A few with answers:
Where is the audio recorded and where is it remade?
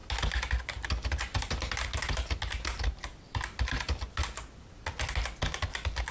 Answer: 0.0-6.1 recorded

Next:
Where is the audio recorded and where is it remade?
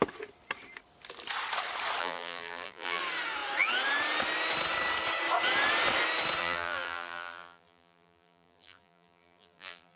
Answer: 0.0-2.0 recorded; 2.0-3.0 remade; 3.0-6.4 recorded; 6.4-10.0 remade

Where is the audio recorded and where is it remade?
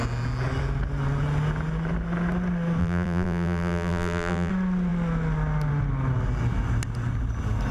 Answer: 0.0-2.8 recorded; 2.8-4.5 remade; 4.5-7.7 recorded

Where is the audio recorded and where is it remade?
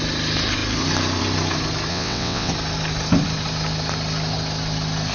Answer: 0.0-1.9 recorded; 1.9-2.5 remade; 2.5-5.1 recorded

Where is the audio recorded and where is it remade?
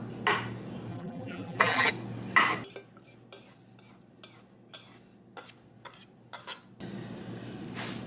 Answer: 0.0-0.9 recorded; 0.9-1.9 remade; 1.9-8.1 recorded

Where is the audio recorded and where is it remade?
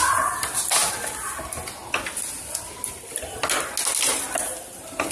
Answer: 0.0-5.1 recorded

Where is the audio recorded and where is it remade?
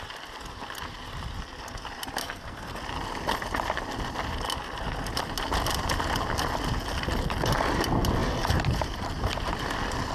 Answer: 0.0-2.2 recorded; 2.2-2.8 remade; 2.8-10.1 recorded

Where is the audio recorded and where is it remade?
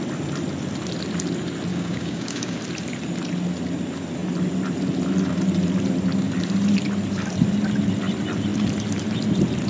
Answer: 0.0-1.7 recorded; 1.7-2.6 remade; 2.6-9.7 recorded